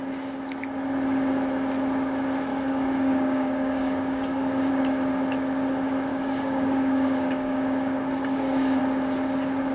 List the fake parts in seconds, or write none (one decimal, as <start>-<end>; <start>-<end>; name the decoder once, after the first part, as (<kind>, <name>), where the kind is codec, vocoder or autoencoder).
2.5-4.7 (codec, DAC); 6.1-8.8